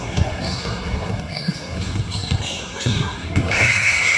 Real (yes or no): no